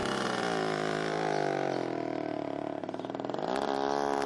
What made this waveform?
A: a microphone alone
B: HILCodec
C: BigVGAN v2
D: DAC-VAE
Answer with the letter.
A